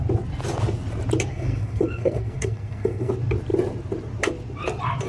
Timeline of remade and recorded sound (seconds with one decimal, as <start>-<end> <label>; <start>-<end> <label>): 0.0-1.3 recorded; 1.3-3.1 remade; 3.1-5.1 recorded